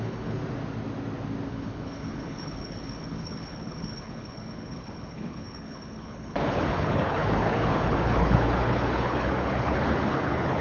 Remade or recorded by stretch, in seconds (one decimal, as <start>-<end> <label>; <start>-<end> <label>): 0.0-0.4 remade; 0.4-1.5 recorded; 1.5-10.6 remade